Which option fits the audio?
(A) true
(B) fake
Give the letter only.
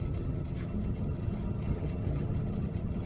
B